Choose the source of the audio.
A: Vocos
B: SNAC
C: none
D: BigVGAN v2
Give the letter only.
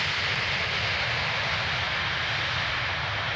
C